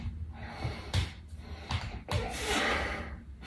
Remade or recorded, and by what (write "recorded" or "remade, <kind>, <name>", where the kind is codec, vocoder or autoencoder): recorded